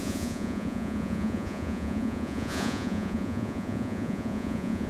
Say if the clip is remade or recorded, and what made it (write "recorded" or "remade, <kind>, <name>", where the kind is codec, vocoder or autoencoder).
remade, vocoder, Vocos